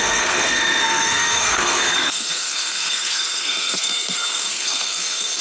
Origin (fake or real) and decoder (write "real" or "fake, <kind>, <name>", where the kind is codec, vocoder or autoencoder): fake, codec, SNAC